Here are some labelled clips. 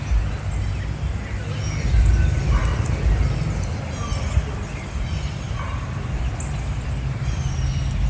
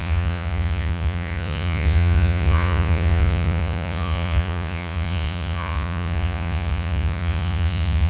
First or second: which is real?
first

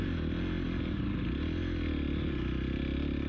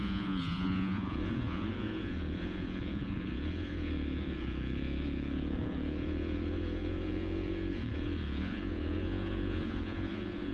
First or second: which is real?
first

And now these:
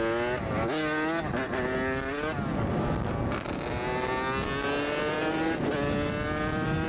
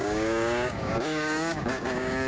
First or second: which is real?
first